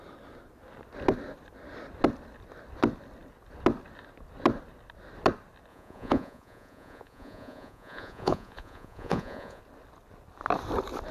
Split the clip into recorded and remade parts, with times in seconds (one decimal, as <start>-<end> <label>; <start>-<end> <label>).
0.0-5.7 recorded; 5.7-9.6 remade; 9.6-11.1 recorded